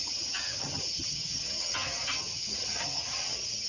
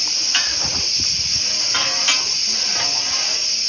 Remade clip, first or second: first